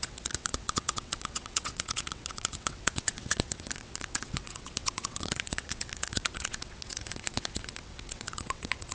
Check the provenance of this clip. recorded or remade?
remade